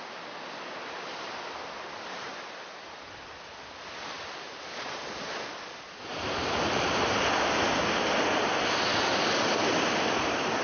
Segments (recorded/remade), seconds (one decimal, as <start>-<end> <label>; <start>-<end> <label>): 0.0-10.6 recorded